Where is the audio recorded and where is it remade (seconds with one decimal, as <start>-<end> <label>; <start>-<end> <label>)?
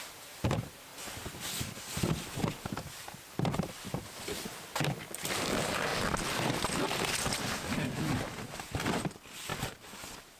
0.0-5.9 remade; 5.9-8.6 recorded; 8.6-9.5 remade; 9.5-10.4 recorded